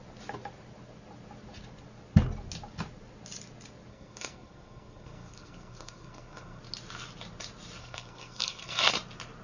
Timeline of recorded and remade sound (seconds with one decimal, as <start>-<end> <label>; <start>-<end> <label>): 0.0-3.9 recorded; 3.9-6.6 remade; 6.6-7.8 recorded; 7.8-8.9 remade; 8.9-9.4 recorded